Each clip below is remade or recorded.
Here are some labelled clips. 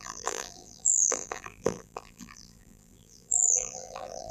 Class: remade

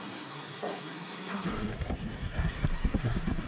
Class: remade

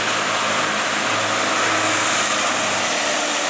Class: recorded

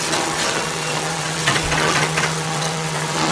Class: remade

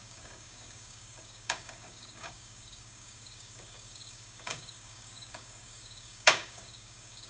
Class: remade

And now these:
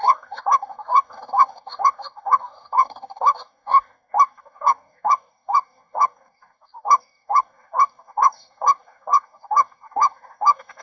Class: remade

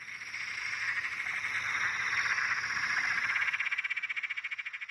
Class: recorded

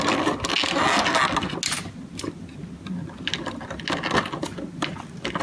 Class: recorded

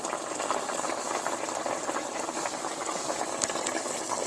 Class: recorded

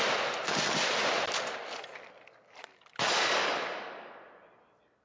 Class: recorded